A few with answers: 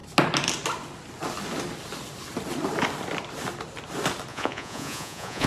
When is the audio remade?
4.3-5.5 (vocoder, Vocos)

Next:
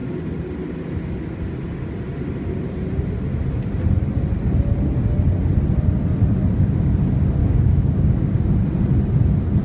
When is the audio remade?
7.4-8.4 (codec, DAC)